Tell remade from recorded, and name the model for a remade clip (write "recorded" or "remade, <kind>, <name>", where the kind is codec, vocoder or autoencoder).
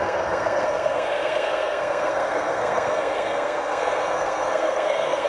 remade, codec, SNAC